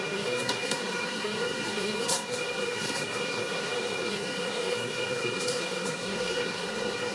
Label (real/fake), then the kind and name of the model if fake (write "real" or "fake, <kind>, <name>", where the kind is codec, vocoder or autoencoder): fake, codec, SNAC